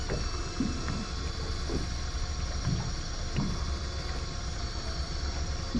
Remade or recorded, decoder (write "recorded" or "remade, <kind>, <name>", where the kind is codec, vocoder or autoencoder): recorded